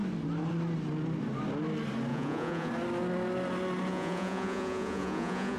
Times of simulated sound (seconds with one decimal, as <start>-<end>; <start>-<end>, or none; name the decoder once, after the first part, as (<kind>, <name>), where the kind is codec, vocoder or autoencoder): 2.1-2.7 (vocoder, Vocos); 3.9-5.6